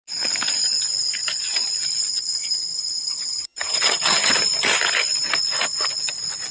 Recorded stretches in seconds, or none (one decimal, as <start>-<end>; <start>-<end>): 0.0-2.1; 4.3-6.5